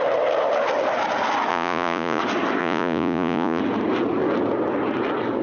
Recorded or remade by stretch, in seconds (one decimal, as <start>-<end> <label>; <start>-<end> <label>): 0.0-1.5 recorded; 1.5-2.2 remade; 2.2-2.6 recorded; 2.6-3.6 remade; 3.6-5.4 recorded